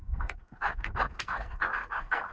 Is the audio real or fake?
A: fake